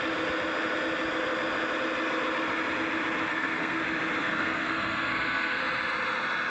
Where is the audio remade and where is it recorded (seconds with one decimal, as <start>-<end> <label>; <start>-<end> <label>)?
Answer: 0.0-3.3 recorded; 3.3-3.8 remade; 3.8-4.2 recorded; 4.2-5.6 remade; 5.6-6.5 recorded